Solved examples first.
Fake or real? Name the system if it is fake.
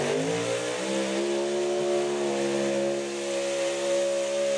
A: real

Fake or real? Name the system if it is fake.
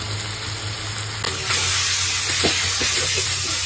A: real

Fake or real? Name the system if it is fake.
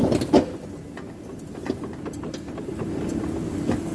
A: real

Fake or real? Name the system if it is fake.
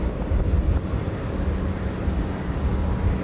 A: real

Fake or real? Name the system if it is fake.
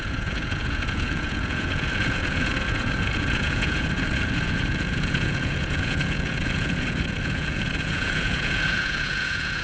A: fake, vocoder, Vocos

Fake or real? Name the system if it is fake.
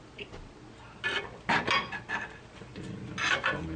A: real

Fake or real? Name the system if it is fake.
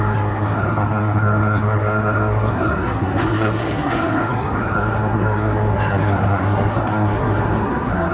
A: fake, codec, SNAC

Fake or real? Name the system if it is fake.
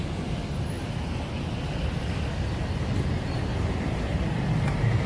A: real